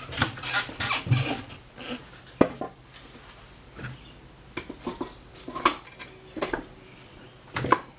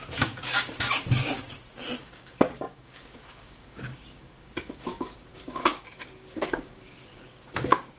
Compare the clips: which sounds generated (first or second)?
second